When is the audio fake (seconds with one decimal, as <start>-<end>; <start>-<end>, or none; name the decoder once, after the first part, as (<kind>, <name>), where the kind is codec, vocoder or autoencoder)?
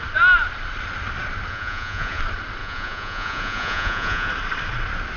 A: 1.5-2.2 (vocoder, Vocos); 2.6-4.3